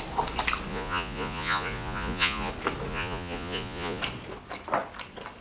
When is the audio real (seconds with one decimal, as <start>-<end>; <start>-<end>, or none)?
0.0-0.7; 2.5-2.9; 4.0-5.4